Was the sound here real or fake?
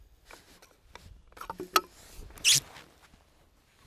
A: real